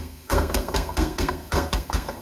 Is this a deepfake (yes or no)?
yes